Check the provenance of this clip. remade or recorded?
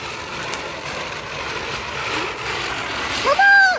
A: recorded